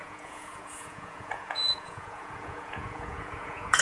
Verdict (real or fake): fake